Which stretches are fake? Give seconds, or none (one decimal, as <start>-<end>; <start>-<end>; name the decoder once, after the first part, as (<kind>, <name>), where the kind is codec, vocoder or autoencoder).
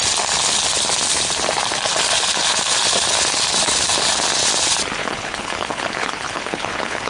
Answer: 5.0-7.1 (codec, HILCodec)